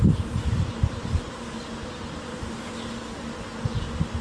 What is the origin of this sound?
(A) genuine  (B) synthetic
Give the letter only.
A